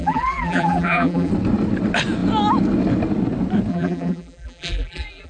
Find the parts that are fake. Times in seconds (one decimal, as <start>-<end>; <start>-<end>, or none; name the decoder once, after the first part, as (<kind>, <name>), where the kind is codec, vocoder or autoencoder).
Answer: 0.0-1.3 (vocoder, BigVGAN v2); 3.7-5.3